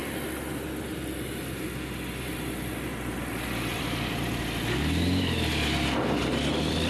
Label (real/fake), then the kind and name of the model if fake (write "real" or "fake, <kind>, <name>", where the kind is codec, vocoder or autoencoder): real